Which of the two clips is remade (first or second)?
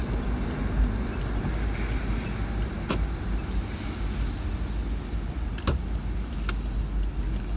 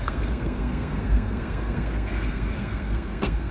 second